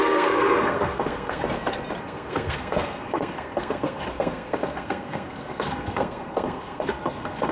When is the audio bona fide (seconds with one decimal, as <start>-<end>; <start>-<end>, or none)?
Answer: 1.4-2.0